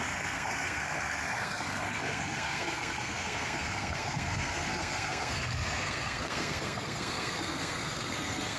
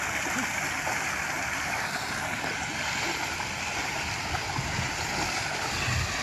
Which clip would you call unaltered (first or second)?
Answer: second